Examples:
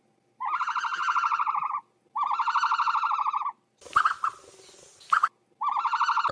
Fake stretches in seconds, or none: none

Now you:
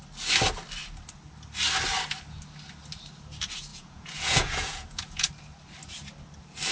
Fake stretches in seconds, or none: 3.7-5.3 (vocoder, Vocos)

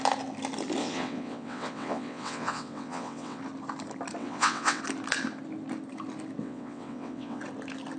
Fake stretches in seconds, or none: 0.8-3.4 (vocoder, WaveNeXt); 4.2-4.8; 6.4-7.4

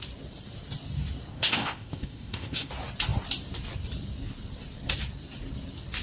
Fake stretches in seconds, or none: 1.3-2.7 (codec, ZipCodec)

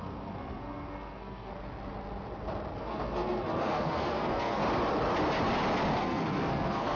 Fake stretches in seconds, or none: 0.0-1.5 (codec, SNAC); 2.8-4.6; 6.0-7.0

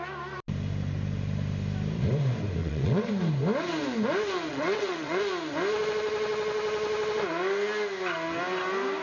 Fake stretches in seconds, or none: 2.6-3.1 (vocoder, WaveNeXt); 4.5-5.2

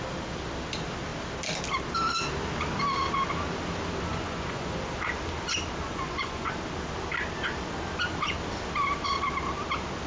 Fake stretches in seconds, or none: 4.1-4.8 (vocoder, Vocos); 5.8-6.5

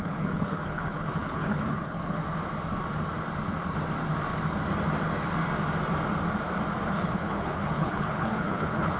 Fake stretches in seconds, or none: 0.0-2.2 (codec, HILCodec); 6.9-9.0